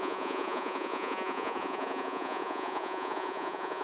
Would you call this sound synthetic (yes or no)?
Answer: yes